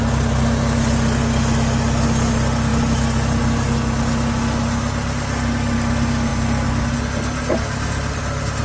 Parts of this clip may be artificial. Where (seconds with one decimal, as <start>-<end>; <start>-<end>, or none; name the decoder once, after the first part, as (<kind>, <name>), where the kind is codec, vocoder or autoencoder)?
none